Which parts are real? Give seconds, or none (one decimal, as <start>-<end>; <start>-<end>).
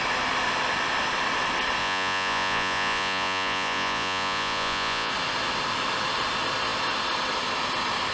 0.0-1.8; 5.1-8.1